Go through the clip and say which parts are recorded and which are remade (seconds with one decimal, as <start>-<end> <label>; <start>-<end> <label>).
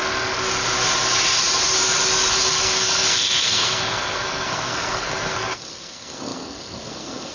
0.0-2.3 recorded; 2.3-7.3 remade